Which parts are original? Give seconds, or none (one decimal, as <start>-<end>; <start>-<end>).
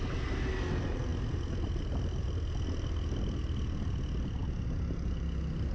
0.0-5.7